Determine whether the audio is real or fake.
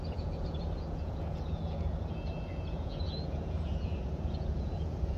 fake